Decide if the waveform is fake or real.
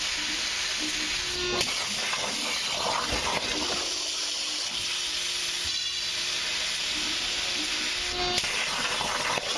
real